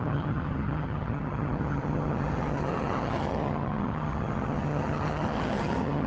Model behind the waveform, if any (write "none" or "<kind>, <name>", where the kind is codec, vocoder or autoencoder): vocoder, HiFi-GAN